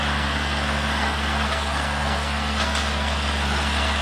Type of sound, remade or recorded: remade